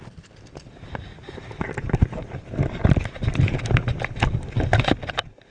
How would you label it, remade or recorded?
recorded